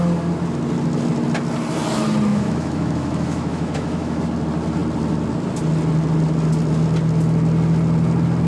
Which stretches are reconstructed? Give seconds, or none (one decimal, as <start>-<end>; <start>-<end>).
2.3-4.2